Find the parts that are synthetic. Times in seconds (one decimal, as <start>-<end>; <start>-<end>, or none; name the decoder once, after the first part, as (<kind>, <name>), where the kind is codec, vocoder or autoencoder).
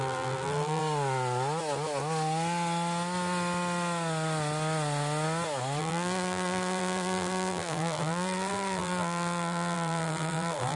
0.0-0.8 (vocoder, BigVGAN v2); 5.8-10.8